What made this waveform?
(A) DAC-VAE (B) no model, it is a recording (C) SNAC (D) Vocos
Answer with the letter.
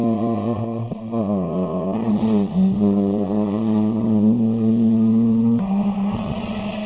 D